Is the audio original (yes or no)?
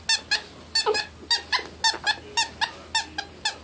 yes